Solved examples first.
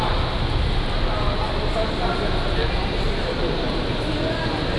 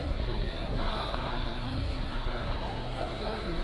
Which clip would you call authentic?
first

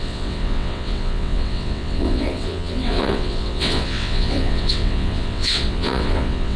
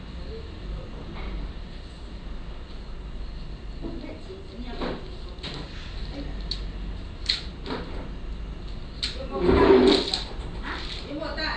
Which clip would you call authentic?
second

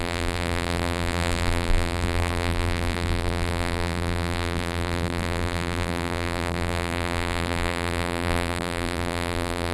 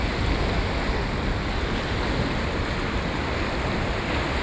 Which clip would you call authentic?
second